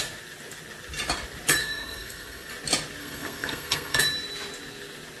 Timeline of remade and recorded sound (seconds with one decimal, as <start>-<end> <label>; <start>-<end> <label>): 0.0-1.6 recorded; 1.6-2.5 remade; 2.5-3.0 recorded; 3.0-4.0 remade; 4.0-5.2 recorded